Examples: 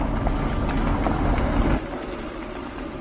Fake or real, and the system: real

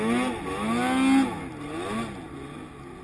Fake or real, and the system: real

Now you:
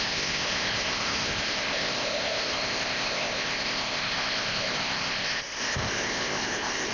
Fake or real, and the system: fake, codec, ZipCodec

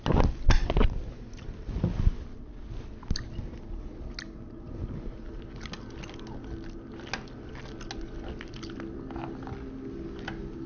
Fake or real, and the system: real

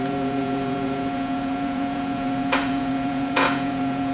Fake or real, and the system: fake, vocoder, Vocos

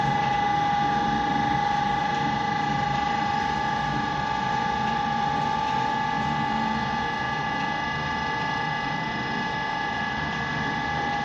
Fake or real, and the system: real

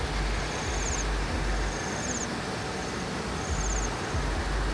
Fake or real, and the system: real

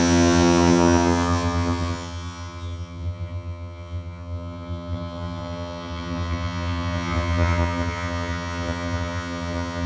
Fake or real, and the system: fake, vocoder, HiFi-GAN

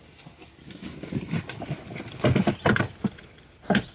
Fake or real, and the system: real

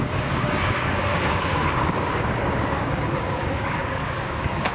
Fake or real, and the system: fake, codec, DAC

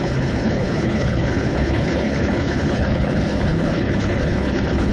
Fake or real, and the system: fake, codec, HILCodec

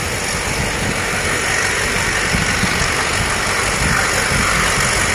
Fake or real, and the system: real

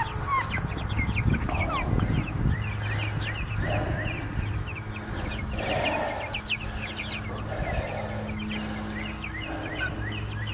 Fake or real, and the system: real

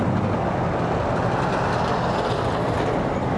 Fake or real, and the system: real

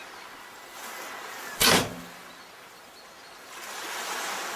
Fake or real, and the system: real